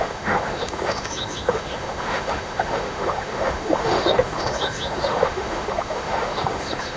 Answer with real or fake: fake